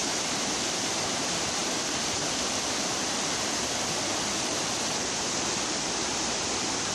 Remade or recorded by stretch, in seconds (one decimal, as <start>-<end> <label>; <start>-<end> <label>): 0.0-6.9 recorded